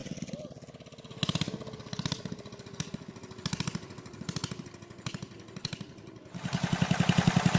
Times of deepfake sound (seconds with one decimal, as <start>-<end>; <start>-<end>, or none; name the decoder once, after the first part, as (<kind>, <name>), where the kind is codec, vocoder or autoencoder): none